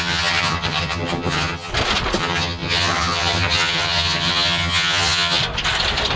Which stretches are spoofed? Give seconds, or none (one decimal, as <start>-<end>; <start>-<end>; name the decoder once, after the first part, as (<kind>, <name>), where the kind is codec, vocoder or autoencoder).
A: 0.0-1.7 (vocoder, HiFi-GAN); 2.2-5.4